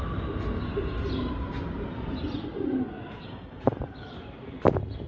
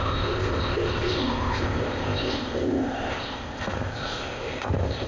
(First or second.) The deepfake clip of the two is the second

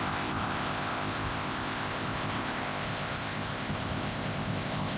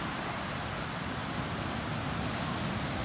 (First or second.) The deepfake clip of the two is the first